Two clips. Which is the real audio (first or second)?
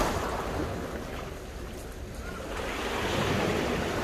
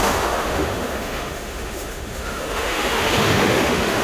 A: first